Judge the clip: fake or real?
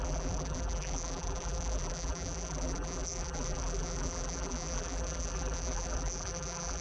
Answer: fake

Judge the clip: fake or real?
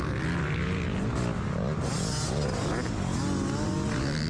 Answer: real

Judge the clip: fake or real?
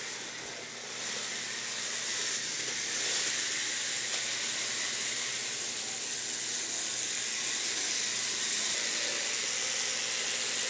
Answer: real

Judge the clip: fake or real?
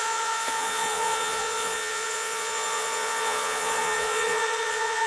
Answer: fake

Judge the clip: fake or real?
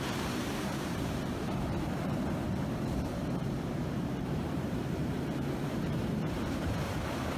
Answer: fake